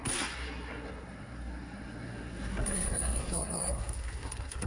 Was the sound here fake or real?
fake